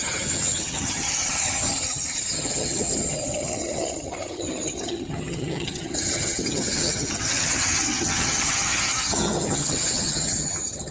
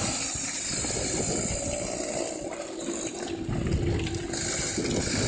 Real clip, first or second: second